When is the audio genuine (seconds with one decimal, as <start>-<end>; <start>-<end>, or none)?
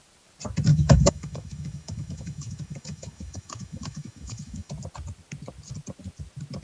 0.0-0.7; 4.7-6.6